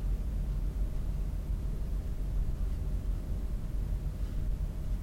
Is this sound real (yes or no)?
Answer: yes